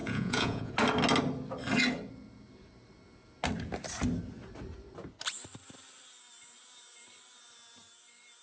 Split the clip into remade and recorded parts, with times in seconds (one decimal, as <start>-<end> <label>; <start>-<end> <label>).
0.0-0.7 remade; 0.7-8.4 recorded